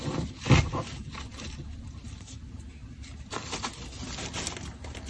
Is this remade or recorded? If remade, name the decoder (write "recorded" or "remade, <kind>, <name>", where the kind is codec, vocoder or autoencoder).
recorded